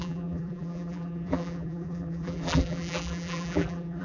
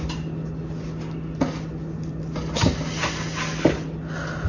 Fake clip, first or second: first